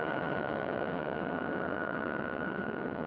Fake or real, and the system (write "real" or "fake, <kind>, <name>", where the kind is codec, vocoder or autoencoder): fake, vocoder, WaveNeXt